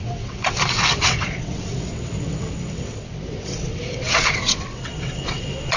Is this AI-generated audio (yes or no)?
yes